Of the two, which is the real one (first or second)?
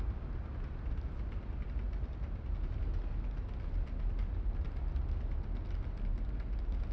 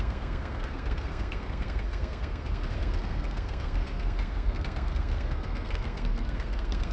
first